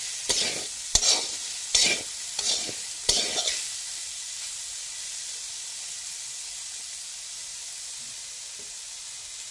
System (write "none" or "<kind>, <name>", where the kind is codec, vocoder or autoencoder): none